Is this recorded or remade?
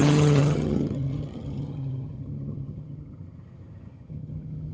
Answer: remade